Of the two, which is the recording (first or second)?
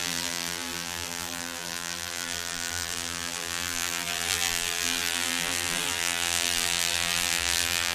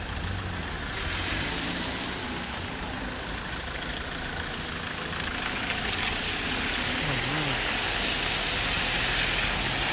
second